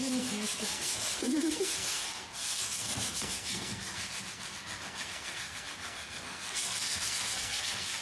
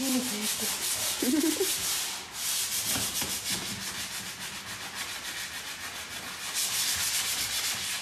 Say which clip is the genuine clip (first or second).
second